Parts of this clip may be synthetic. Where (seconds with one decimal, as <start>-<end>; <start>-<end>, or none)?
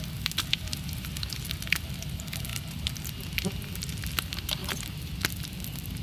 4.6-5.4